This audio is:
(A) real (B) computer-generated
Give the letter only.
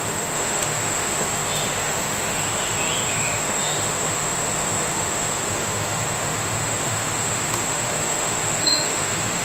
B